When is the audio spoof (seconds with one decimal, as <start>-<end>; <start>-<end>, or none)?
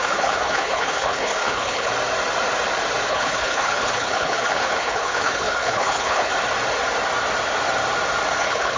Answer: 0.0-1.9; 3.1-6.3; 8.4-8.8